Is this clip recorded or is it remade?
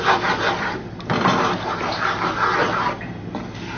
recorded